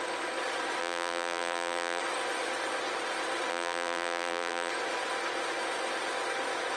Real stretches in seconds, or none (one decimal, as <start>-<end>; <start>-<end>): 0.0-0.8; 2.0-3.5; 4.7-6.8

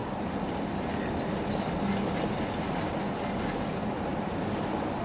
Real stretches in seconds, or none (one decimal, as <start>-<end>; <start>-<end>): 0.0-4.1; 4.6-5.0

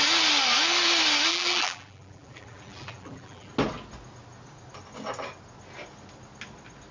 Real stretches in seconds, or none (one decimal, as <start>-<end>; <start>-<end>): 0.0-1.3; 3.5-6.9

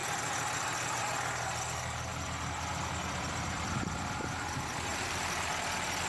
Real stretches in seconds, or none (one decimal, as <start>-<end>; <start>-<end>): 0.0-4.9; 5.5-6.1

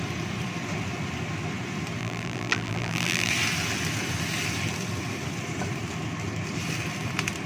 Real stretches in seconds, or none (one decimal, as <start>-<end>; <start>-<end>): 0.0-2.0; 3.3-7.5

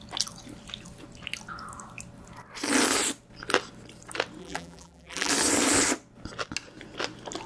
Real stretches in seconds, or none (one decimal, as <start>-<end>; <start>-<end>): 0.0-4.4; 5.3-7.5

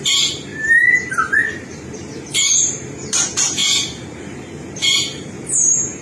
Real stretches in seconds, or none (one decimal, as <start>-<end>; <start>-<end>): none

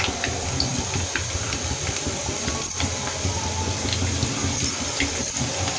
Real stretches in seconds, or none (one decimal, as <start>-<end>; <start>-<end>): 0.0-0.7; 3.8-5.8